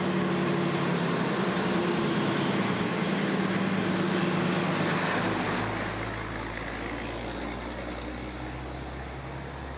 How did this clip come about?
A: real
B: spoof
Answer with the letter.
A